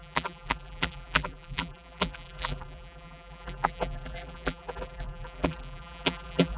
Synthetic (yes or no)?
yes